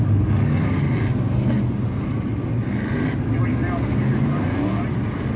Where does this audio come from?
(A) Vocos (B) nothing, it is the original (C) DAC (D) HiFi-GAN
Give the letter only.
B